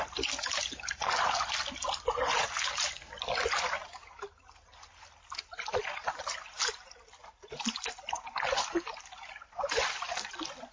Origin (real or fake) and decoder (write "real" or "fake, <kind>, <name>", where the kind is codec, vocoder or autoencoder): real